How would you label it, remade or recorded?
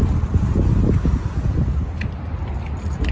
recorded